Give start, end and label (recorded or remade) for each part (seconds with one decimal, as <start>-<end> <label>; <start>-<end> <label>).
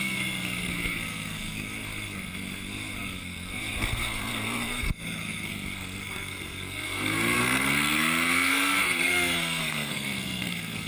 0.0-10.9 remade